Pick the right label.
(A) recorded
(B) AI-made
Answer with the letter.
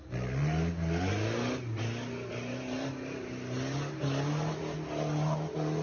A